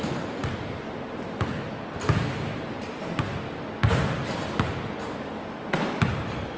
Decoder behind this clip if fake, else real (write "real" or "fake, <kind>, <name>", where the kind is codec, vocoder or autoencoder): real